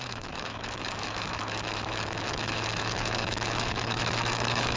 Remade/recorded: remade